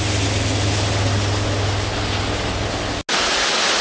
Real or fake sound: real